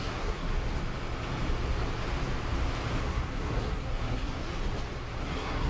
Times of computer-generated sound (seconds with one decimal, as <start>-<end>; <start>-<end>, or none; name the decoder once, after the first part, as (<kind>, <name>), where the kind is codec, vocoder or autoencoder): 0.0-0.5 (codec, SNAC); 3.0-4.6; 5.2-5.7